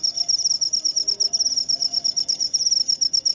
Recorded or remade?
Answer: recorded